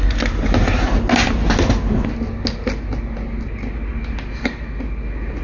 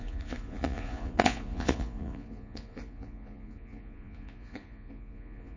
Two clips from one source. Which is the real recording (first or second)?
first